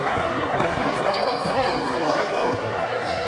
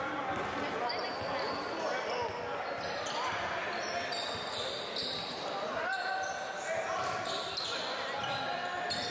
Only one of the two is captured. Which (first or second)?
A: second